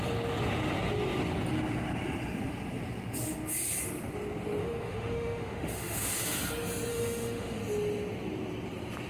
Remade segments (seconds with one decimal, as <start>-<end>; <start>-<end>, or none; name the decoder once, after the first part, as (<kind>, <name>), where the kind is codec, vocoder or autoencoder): 4.6-6.4 (autoencoder, DAC-VAE); 6.9-7.6